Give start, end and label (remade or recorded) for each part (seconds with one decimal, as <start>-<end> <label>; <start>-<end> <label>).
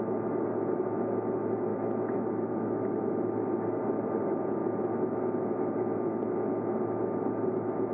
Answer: 0.0-7.9 recorded